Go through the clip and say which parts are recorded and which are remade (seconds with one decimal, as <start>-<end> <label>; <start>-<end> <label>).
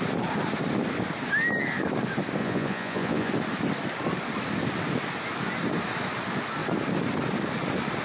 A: 0.0-2.4 recorded; 2.4-3.3 remade; 3.3-8.0 recorded